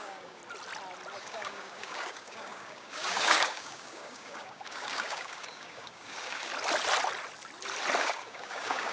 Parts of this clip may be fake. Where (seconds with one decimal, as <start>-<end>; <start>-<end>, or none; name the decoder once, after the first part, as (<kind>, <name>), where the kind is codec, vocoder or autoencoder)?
0.0-0.4 (codec, DAC); 1.2-6.5; 8.0-8.9